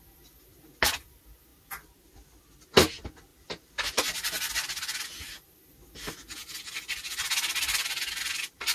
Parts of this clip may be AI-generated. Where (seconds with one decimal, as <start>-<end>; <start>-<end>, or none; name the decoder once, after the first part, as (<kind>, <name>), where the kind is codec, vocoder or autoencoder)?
1.5-2.1 (vocoder, BigVGAN v2); 3.3-4.5